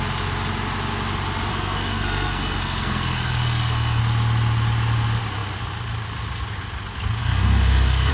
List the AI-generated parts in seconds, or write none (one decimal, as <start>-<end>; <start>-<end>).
1.5-4.0; 7.2-8.1